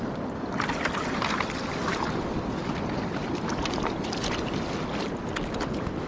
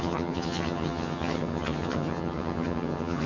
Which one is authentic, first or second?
first